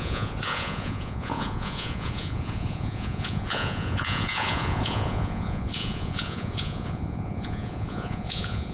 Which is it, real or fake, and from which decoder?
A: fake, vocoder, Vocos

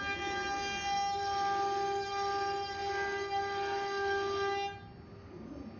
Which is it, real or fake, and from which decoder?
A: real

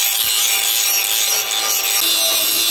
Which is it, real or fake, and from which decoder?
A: real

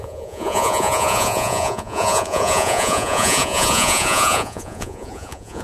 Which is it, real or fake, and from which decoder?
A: fake, vocoder, Vocos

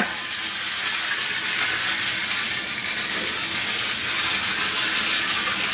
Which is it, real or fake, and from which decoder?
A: real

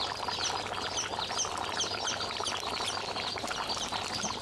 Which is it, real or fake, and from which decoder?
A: real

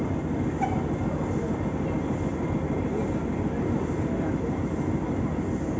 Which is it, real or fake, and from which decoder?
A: real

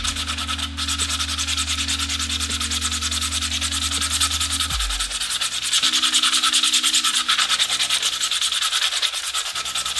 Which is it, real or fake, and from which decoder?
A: real